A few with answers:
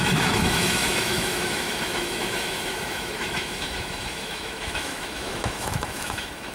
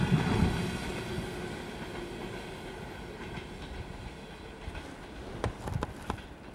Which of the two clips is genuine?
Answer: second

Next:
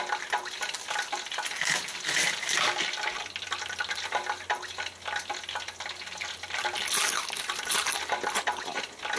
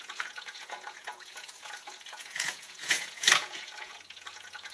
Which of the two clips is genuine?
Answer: first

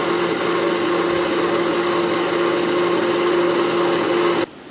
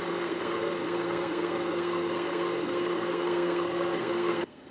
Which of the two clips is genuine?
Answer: first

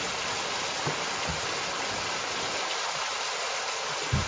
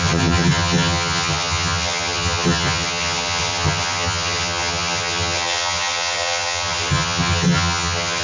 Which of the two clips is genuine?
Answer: first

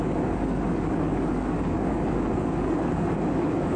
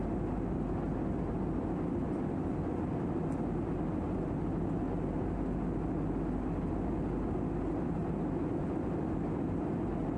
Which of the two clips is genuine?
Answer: second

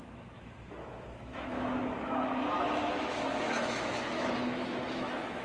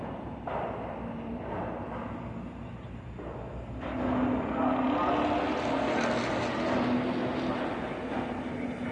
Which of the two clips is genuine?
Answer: second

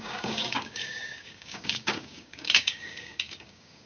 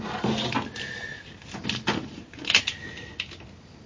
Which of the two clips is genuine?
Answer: second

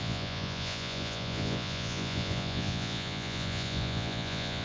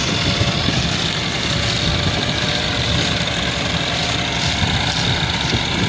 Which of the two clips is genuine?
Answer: second